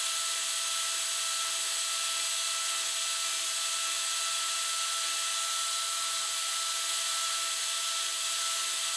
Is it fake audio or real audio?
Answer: real